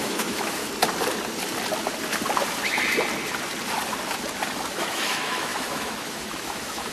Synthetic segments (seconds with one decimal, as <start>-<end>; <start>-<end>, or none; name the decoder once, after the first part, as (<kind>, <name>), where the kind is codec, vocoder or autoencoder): 0.0-0.6 (autoencoder, DAC-VAE); 4.7-6.9